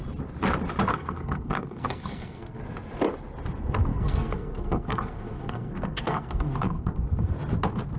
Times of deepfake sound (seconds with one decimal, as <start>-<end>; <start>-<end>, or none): 0.9-2.6; 3.9-7.3